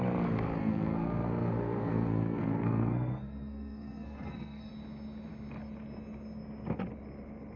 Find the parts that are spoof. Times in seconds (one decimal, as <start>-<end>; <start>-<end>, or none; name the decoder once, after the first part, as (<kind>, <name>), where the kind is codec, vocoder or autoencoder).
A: 0.6-4.7 (codec, SNAC)